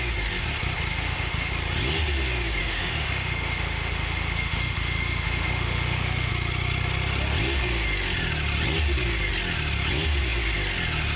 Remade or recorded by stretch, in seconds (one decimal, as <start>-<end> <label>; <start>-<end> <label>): 0.0-0.9 recorded; 0.9-1.5 remade; 1.5-2.6 recorded; 2.6-6.3 remade; 6.3-11.2 recorded